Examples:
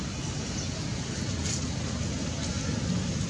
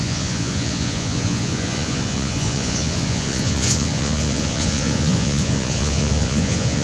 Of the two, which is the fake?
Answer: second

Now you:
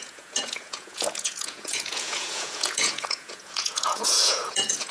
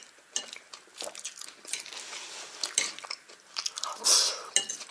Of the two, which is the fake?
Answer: first